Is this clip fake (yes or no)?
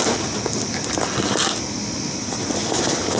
no